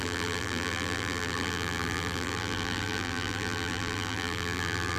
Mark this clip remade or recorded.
remade